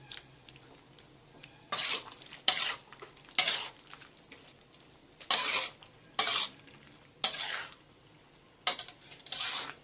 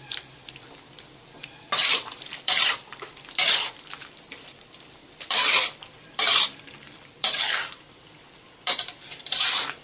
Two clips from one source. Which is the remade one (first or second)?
second